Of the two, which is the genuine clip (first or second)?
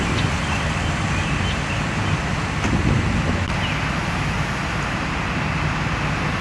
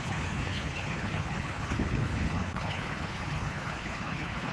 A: first